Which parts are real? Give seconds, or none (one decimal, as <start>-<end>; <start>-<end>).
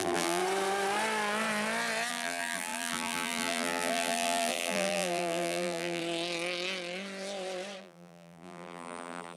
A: 0.4-2.1; 6.0-7.8